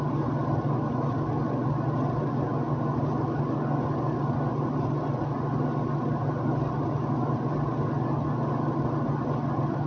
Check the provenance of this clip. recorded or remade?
recorded